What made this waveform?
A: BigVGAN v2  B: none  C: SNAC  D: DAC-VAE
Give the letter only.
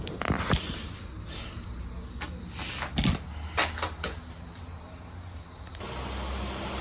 B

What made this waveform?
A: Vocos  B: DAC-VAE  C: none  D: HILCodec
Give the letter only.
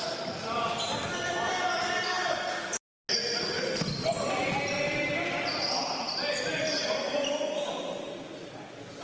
C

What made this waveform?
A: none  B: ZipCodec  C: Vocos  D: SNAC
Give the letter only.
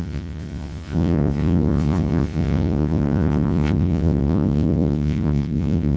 C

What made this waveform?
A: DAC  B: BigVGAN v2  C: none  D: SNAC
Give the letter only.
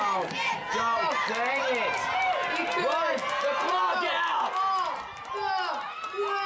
C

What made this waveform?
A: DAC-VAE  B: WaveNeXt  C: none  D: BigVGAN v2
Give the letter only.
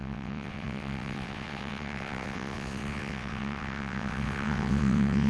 B